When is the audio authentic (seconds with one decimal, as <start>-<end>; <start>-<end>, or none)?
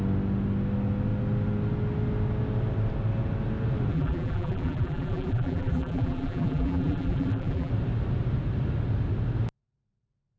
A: 0.0-3.9; 7.7-10.4